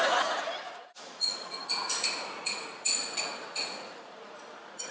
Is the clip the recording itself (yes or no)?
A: no